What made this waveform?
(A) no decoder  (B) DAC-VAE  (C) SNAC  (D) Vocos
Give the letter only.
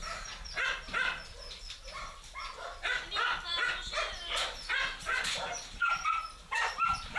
A